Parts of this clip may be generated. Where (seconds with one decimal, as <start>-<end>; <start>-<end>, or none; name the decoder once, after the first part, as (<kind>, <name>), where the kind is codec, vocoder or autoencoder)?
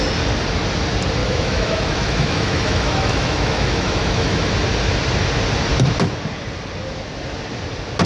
1.2-4.5 (autoencoder, DAC-VAE)